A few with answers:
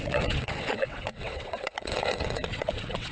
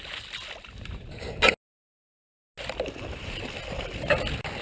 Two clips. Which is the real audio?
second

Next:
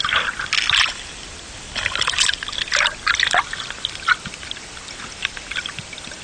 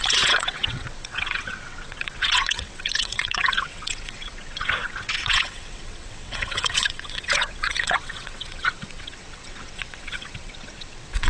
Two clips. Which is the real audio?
first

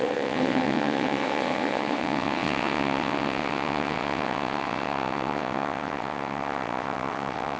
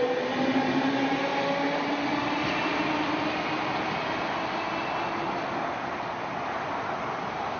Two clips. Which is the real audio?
second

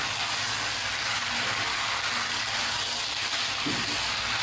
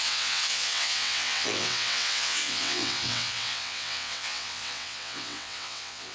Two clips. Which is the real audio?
first